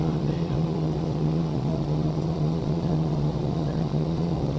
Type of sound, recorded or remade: remade